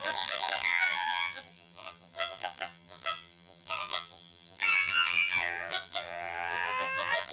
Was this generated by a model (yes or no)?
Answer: yes